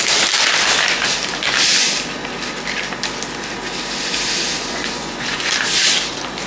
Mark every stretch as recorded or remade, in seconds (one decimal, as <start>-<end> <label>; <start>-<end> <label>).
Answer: 0.0-4.5 recorded; 4.5-5.5 remade; 5.5-6.5 recorded